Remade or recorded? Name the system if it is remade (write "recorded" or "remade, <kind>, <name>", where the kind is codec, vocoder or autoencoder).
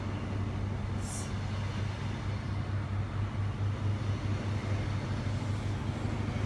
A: recorded